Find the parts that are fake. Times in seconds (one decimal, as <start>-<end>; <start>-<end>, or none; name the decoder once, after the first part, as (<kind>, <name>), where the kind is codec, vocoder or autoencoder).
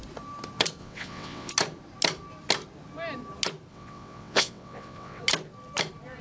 0.8-1.5 (vocoder, WaveNeXt); 3.7-5.2